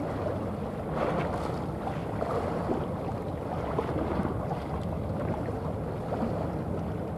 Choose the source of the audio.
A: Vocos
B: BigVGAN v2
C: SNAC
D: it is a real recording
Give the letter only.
D